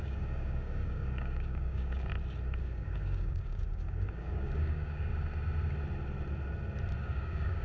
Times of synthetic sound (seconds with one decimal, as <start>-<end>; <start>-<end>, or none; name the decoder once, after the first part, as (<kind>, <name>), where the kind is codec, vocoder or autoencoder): 0.0-2.1 (codec, DAC); 2.6-5.1; 7.0-7.6